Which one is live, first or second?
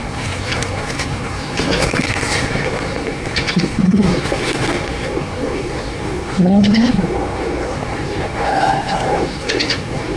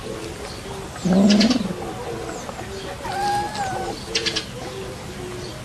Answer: second